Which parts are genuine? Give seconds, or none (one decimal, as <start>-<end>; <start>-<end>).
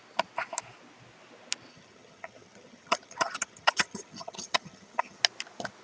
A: 0.0-1.7; 5.2-5.8